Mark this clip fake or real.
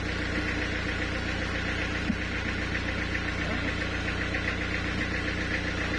real